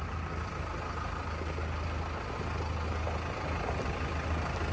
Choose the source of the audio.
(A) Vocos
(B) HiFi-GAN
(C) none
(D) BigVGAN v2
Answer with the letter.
C